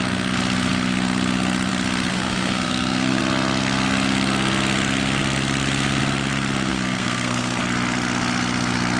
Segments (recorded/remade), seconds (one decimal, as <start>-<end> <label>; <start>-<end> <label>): 0.0-2.1 recorded; 2.1-3.2 remade; 3.2-6.7 recorded; 6.7-7.6 remade; 7.6-9.0 recorded